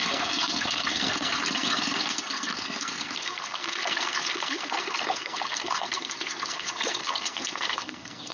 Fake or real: fake